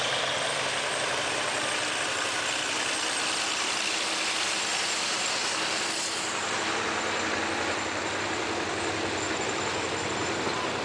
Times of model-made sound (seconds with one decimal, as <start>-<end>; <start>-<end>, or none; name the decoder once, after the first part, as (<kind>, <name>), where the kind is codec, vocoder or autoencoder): 4.7-9.3 (vocoder, BigVGAN v2)